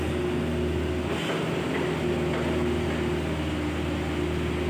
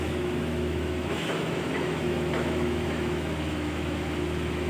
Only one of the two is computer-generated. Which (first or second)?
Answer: second